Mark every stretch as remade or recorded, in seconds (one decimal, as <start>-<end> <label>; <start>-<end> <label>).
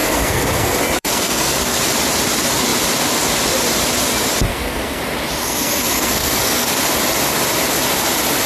0.0-1.8 remade; 1.8-4.5 recorded; 4.5-5.0 remade; 5.0-5.4 recorded; 5.4-6.8 remade; 6.8-8.5 recorded